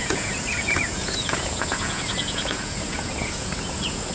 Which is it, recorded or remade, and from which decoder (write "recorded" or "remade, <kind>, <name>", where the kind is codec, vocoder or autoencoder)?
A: remade, vocoder, Vocos